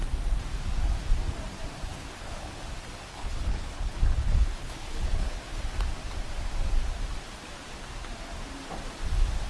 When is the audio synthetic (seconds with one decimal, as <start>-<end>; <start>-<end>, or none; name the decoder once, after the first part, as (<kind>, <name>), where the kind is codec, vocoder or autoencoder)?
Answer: 1.9-2.6 (codec, HILCodec); 3.1-5.6